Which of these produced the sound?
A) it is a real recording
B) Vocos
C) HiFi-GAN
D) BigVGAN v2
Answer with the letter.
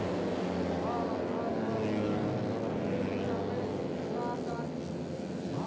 A